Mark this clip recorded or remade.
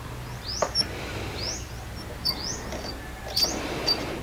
recorded